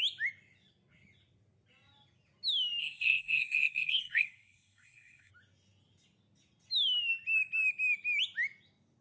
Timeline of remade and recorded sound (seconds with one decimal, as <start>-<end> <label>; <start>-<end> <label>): 0.0-2.8 recorded; 2.8-5.3 remade; 5.3-9.0 recorded